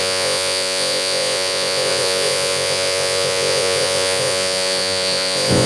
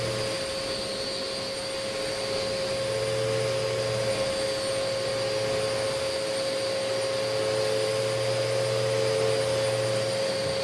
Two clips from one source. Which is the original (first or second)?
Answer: second